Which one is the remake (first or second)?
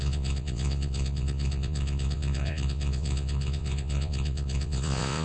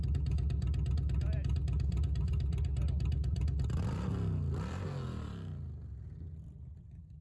first